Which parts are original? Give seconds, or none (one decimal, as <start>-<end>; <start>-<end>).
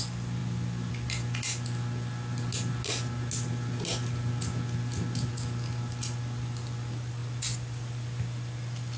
0.0-9.0